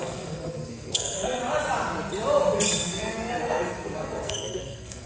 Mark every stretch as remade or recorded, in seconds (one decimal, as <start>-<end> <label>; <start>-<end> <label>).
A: 0.0-1.4 remade; 1.4-2.8 recorded; 2.8-5.1 remade